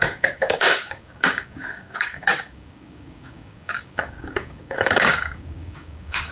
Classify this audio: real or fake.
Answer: fake